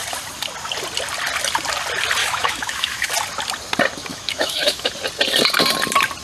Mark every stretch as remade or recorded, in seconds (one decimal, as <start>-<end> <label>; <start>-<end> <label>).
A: 0.0-2.2 recorded; 2.2-3.1 remade; 3.1-4.1 recorded; 4.1-4.9 remade; 4.9-6.2 recorded